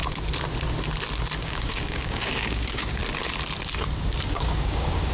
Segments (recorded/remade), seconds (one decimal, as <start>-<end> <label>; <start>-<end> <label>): 0.0-1.4 recorded; 1.4-3.0 remade; 3.0-4.2 recorded; 4.2-5.1 remade